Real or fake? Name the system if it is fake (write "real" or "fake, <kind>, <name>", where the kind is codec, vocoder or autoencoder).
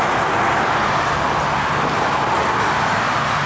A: real